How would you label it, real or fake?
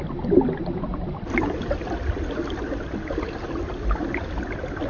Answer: real